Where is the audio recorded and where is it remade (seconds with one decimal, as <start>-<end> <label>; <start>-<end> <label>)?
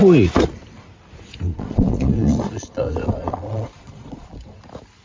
0.0-1.5 recorded; 1.5-4.3 remade; 4.3-5.0 recorded